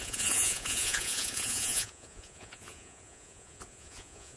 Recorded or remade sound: remade